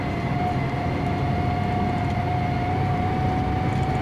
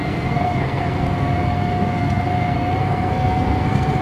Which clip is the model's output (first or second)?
second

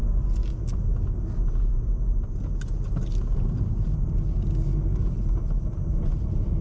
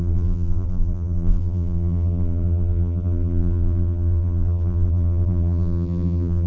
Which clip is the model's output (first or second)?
second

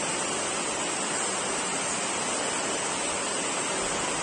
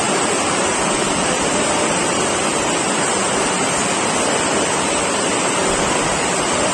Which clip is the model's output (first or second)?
second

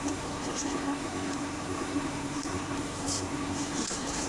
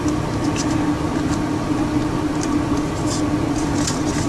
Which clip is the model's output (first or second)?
first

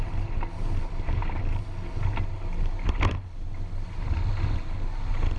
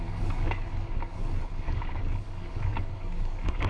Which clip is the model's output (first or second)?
second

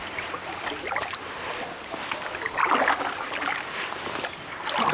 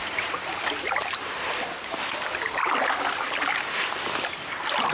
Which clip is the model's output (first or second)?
second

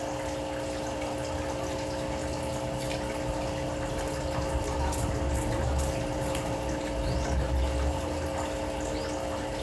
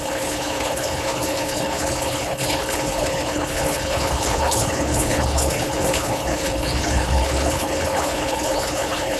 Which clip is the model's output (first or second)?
second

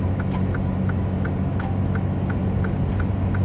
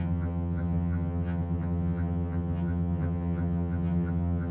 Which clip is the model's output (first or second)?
second